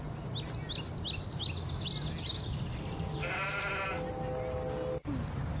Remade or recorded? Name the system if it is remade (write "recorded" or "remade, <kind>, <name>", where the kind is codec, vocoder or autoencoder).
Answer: recorded